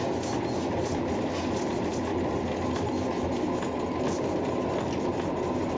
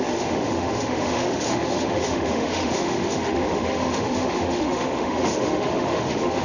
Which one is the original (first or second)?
first